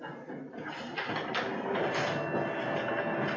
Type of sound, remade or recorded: recorded